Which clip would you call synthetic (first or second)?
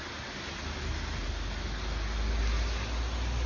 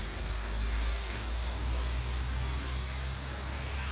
second